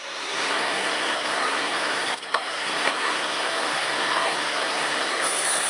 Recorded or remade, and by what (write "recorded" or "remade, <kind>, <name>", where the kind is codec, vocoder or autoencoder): remade, codec, SNAC